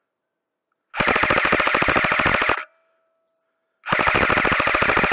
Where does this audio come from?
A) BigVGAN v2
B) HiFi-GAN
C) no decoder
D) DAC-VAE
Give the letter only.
C